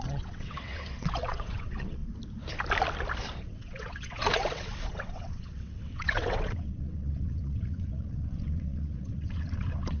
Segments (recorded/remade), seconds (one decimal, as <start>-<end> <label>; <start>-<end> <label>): 0.0-2.0 remade; 2.0-3.4 recorded; 3.4-10.0 remade